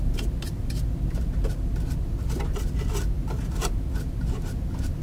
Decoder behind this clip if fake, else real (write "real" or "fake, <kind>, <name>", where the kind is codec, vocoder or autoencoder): real